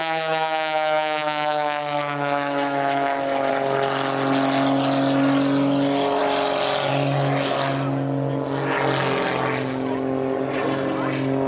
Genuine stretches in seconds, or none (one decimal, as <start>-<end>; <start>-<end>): 3.5-11.5